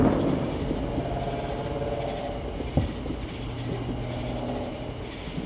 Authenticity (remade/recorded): recorded